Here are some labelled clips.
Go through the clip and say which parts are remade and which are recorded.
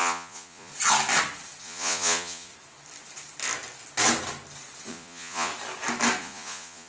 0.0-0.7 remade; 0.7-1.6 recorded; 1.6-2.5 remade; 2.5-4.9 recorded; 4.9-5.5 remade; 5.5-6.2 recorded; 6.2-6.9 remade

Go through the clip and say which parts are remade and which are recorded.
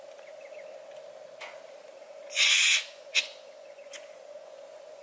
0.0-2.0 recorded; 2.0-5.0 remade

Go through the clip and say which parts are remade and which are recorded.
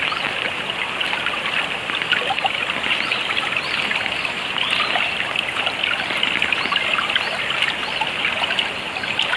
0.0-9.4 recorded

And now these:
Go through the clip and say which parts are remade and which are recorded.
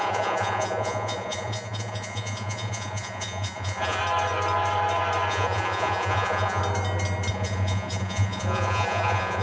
0.0-4.0 remade; 4.0-5.3 recorded; 5.3-6.6 remade; 6.6-7.3 recorded; 7.3-9.4 remade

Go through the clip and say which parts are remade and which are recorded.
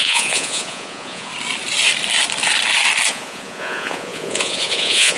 0.0-1.3 remade; 1.3-3.1 recorded; 3.1-5.2 remade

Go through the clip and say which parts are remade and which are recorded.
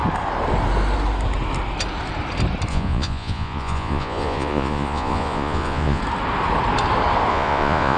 0.0-2.7 recorded; 2.7-6.0 remade; 6.0-7.3 recorded; 7.3-8.0 remade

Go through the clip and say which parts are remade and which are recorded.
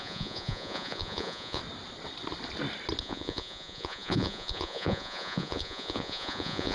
0.0-1.6 remade; 1.6-3.0 recorded; 3.0-6.7 remade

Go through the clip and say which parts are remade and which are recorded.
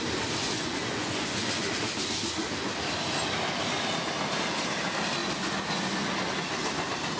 0.0-0.4 recorded; 0.4-1.7 remade; 1.7-7.2 recorded